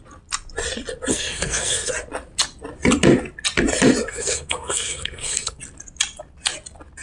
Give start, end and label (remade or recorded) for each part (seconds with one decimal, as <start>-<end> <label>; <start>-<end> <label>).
0.0-1.1 recorded; 1.1-1.9 remade; 1.9-4.1 recorded; 4.1-5.6 remade; 5.6-7.0 recorded